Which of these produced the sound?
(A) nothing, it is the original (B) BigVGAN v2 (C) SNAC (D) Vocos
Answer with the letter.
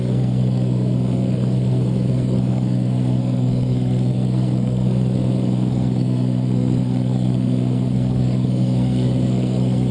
C